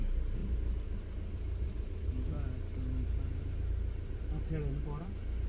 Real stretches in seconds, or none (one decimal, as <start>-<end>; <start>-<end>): 0.0-5.5